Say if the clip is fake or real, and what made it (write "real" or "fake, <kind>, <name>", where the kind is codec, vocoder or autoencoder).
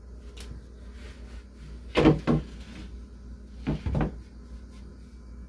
real